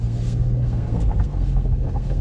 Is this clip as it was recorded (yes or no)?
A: no